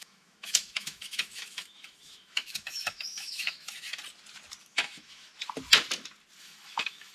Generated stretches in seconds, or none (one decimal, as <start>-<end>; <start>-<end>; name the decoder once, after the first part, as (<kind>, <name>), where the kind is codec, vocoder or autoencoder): 0.0-4.0 (autoencoder, DAC-VAE); 4.6-5.3; 6.4-7.1